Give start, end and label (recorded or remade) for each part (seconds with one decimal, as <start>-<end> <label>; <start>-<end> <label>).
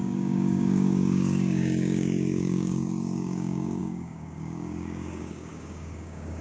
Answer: 0.0-6.4 remade